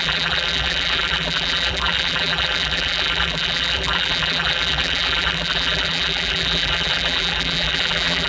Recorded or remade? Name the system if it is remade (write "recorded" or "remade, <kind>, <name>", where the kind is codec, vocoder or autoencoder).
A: remade, vocoder, BigVGAN v2